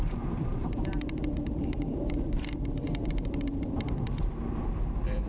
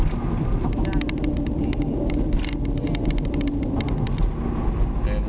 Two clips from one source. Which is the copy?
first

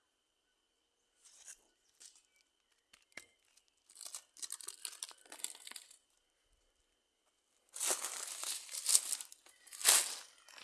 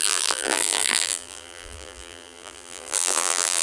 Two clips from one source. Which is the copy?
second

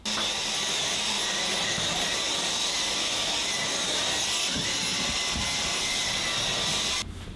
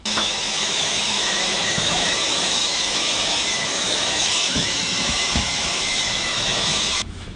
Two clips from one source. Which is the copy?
second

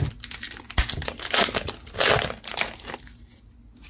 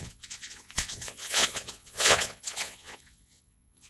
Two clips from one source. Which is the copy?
second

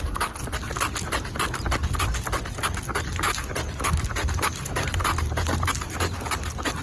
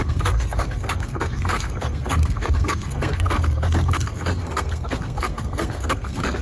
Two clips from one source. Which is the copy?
second